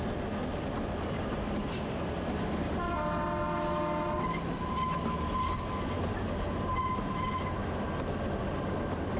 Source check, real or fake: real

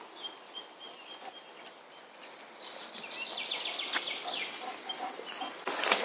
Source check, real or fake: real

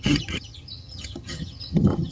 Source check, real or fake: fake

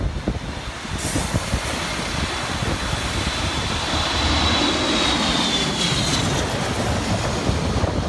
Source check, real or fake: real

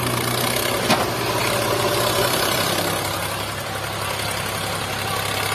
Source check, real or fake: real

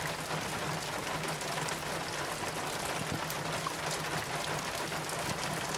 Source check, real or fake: real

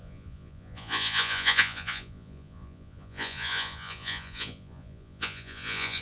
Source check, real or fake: fake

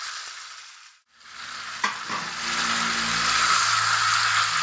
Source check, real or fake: real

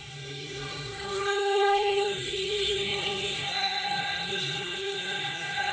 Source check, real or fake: fake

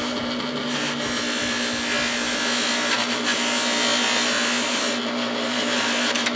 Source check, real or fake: real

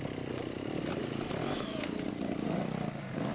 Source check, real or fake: real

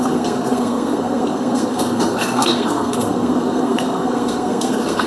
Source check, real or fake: fake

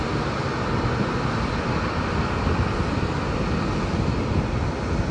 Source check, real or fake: real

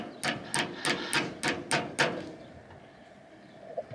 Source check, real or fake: real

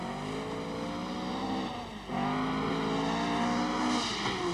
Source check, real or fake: real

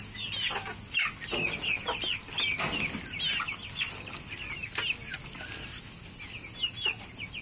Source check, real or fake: real